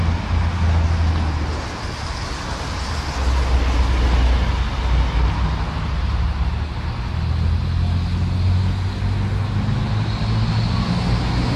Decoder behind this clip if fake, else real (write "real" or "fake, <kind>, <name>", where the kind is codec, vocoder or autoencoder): real